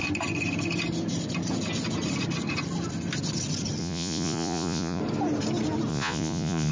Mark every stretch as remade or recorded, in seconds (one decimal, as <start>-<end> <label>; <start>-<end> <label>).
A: 0.0-3.8 recorded; 3.8-5.0 remade; 5.0-5.9 recorded; 5.9-6.7 remade